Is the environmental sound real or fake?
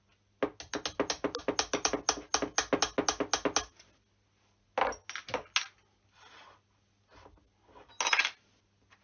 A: real